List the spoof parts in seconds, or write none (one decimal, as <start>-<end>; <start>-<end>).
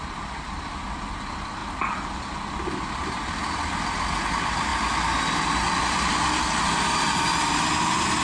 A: none